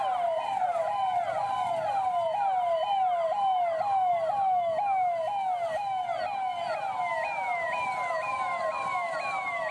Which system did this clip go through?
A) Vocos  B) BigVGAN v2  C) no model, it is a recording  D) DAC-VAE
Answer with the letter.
C